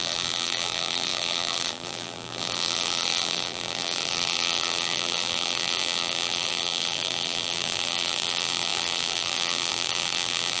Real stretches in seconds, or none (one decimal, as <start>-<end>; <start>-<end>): none